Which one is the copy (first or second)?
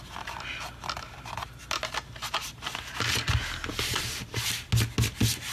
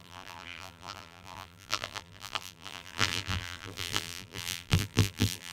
second